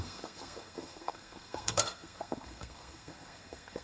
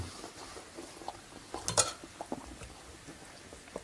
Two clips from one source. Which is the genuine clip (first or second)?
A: second